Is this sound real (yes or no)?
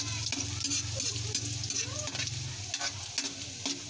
yes